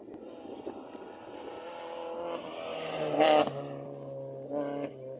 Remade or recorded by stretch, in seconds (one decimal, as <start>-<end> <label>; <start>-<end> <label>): 0.0-5.2 recorded